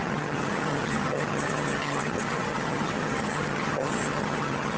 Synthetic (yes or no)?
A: yes